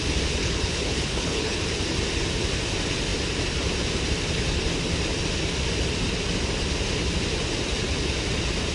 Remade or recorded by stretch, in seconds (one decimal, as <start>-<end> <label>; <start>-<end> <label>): 0.0-0.4 recorded; 0.4-1.6 remade; 1.6-8.7 recorded